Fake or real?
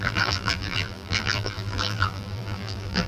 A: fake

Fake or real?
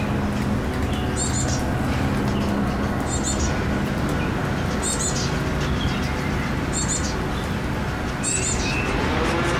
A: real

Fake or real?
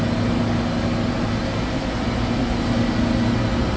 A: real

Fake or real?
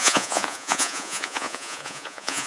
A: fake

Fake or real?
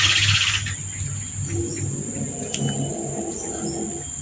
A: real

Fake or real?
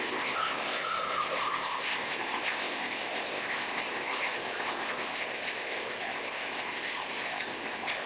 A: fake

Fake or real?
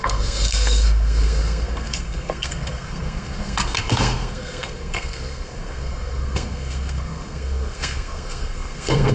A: fake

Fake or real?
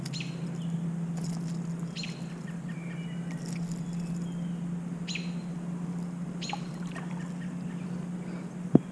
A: real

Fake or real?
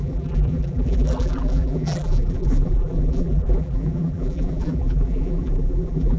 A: fake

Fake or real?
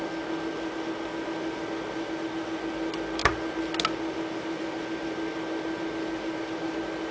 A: real